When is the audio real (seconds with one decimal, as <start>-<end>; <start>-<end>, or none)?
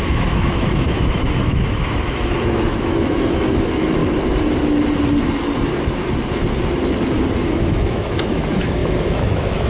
4.0-7.6